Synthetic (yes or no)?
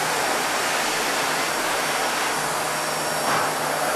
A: no